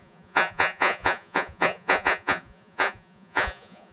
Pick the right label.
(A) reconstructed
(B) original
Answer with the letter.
A